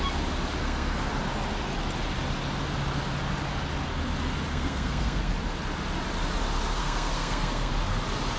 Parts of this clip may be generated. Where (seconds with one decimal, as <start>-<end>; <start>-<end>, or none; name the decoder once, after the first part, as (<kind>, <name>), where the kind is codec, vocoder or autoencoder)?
0.6-1.1 (codec, SNAC); 4.5-5.3; 6.8-7.7